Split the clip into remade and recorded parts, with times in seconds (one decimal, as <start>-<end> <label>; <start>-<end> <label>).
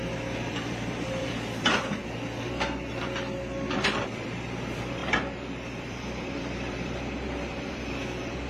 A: 0.0-2.0 remade; 2.0-2.9 recorded; 2.9-8.5 remade